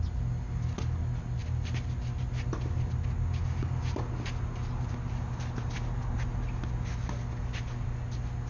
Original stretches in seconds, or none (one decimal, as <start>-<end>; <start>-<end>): 0.0-8.5